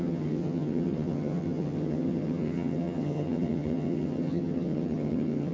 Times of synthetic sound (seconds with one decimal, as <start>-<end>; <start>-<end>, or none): 0.0-5.5